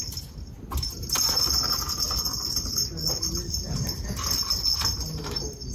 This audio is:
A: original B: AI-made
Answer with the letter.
A